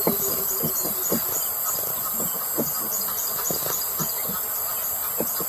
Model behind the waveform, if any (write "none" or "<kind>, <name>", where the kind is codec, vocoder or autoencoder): none